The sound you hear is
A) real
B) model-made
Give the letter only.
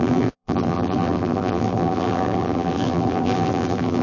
B